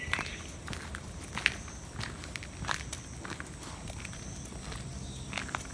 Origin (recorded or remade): recorded